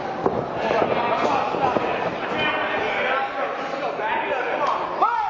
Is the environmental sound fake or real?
real